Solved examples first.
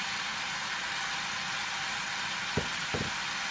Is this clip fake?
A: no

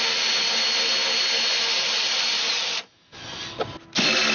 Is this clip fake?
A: no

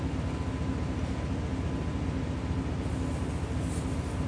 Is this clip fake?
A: no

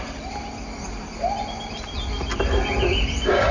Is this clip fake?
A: no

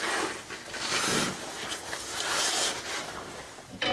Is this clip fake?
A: no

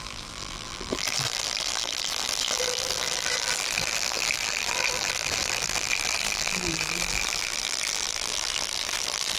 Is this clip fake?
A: yes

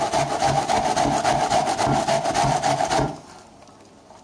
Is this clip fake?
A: no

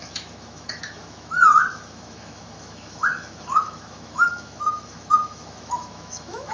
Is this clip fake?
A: yes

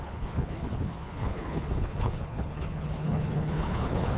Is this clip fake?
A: yes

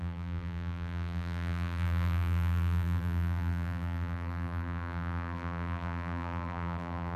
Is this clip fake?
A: yes